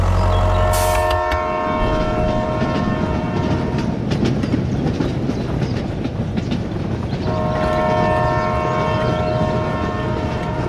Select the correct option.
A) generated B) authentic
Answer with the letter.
B